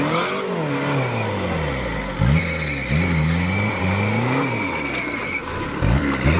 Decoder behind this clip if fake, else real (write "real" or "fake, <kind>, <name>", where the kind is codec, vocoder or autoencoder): real